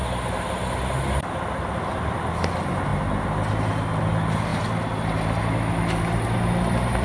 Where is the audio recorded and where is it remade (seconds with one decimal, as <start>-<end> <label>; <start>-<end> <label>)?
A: 0.0-7.0 recorded